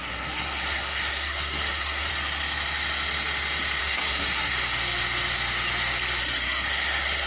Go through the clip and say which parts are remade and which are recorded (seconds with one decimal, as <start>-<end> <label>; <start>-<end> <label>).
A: 0.0-2.1 remade; 2.1-3.8 recorded; 3.8-4.5 remade; 4.5-6.2 recorded; 6.2-7.3 remade